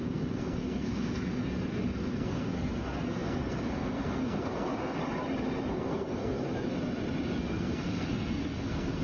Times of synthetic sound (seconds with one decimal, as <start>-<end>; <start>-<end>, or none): 0.0-5.0; 5.7-6.5; 7.4-9.0